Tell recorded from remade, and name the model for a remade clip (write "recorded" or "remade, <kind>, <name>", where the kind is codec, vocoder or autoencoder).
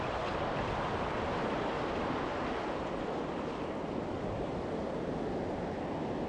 recorded